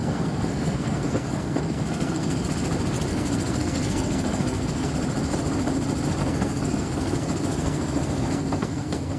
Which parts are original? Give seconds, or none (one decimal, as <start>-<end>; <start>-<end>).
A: 2.5-3.1; 4.9-6.2